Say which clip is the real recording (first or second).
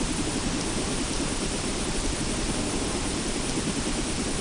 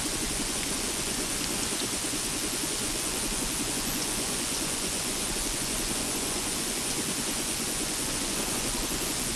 first